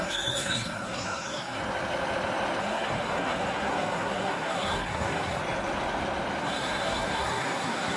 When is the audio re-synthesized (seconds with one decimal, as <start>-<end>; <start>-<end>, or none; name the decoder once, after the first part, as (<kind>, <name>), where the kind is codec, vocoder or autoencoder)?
0.0-1.6 (codec, SNAC); 2.6-5.4; 6.4-8.0